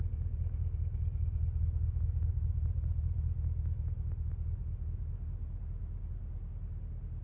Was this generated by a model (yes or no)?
no